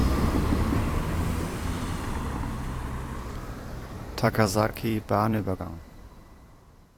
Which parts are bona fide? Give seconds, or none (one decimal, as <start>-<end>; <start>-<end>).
0.0-3.5